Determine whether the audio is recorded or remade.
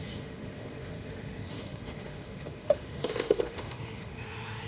remade